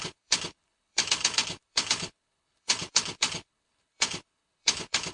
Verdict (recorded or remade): remade